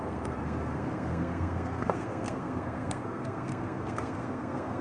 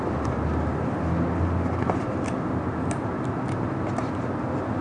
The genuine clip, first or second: second